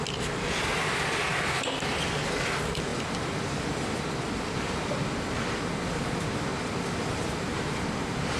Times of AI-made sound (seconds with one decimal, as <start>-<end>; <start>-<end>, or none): 0.0-6.5; 7.0-8.4